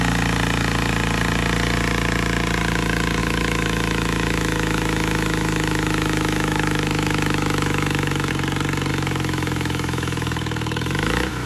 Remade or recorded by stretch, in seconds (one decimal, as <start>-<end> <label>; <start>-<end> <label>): 0.0-3.2 recorded; 3.2-8.3 remade; 8.3-8.9 recorded; 8.9-11.5 remade